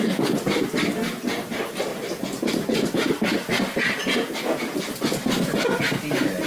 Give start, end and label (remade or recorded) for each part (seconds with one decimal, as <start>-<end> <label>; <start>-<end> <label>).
0.0-1.9 recorded; 1.9-5.8 remade; 5.8-6.5 recorded